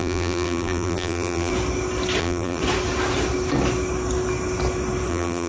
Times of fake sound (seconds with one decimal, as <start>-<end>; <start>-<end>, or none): 0.0-1.5; 2.2-2.6; 5.1-5.5